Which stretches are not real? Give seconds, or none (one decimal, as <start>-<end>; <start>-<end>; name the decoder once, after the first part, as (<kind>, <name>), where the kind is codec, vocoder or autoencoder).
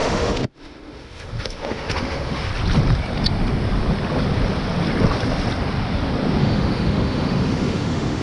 0.0-2.5 (autoencoder, DAC-VAE); 6.4-8.2